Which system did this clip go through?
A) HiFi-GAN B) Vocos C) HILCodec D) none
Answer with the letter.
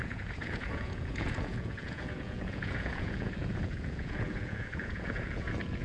B